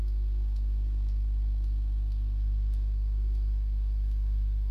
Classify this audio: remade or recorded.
remade